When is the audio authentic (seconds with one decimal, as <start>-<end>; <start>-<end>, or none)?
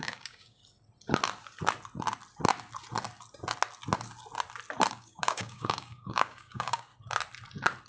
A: 0.6-4.9; 6.9-7.9